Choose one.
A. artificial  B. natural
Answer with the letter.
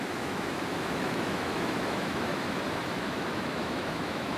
A